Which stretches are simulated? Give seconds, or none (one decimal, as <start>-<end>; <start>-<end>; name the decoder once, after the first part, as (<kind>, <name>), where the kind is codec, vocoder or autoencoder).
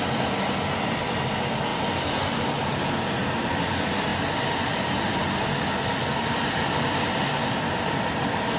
none